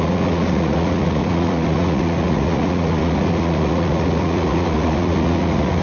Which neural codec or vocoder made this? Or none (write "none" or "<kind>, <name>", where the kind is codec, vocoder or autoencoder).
vocoder, Vocos